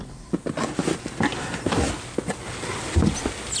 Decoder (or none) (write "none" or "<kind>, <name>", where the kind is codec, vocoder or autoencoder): none